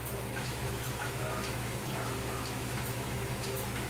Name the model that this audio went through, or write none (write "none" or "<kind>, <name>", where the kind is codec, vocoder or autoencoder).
autoencoder, DAC-VAE